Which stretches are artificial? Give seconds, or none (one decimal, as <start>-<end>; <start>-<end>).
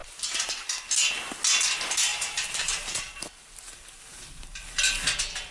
0.0-0.5; 2.1-4.8